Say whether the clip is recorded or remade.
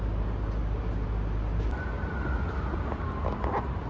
recorded